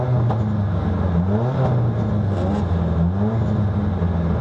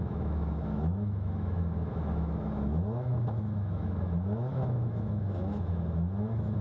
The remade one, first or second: second